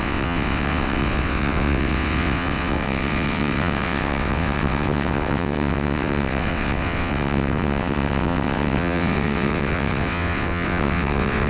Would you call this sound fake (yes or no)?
yes